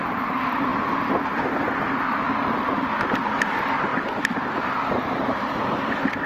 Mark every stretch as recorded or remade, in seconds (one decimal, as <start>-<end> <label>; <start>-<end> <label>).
0.0-3.9 recorded; 3.9-4.4 remade; 4.4-6.3 recorded